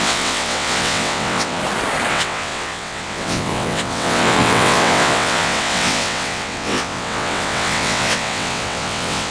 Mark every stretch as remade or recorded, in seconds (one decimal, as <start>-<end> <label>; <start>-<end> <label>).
0.0-1.6 remade; 1.6-2.1 recorded; 2.1-9.3 remade